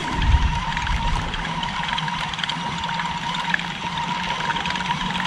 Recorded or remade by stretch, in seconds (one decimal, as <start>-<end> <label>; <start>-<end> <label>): 0.0-5.3 remade